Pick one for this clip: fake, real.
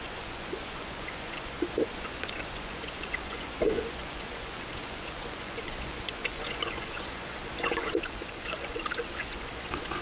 fake